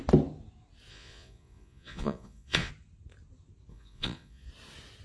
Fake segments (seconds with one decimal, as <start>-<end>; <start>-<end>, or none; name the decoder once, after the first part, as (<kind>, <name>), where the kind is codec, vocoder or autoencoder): 0.9-2.7 (vocoder, Vocos); 3.7-4.5